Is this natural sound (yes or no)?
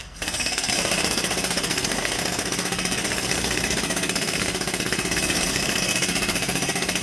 no